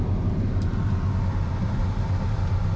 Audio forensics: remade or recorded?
recorded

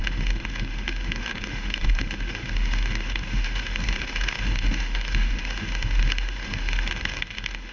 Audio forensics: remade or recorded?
remade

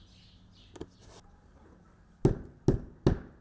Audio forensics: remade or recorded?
recorded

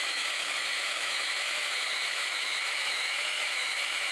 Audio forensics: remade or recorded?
remade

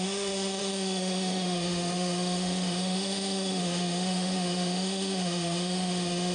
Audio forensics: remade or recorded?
remade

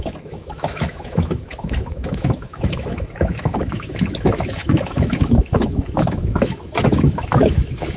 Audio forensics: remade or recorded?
remade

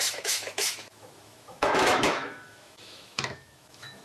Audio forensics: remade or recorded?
remade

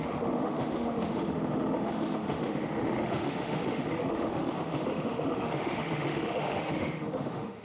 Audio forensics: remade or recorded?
remade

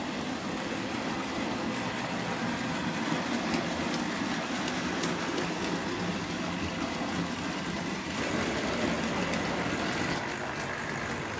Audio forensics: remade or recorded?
recorded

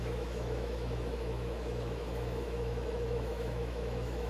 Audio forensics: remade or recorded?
remade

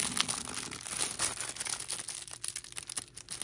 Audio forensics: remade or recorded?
recorded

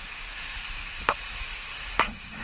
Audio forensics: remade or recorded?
remade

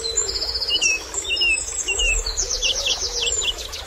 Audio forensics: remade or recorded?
remade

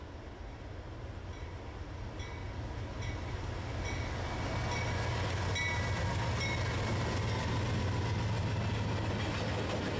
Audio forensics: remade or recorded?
recorded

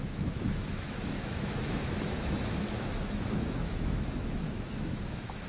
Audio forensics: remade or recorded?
remade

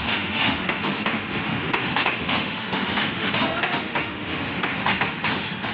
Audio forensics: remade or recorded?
remade